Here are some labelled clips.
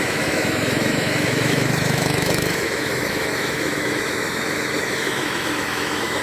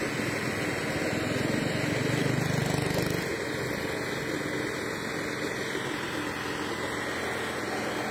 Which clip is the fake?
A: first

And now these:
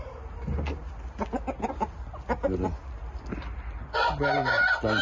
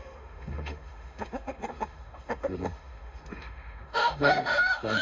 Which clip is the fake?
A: second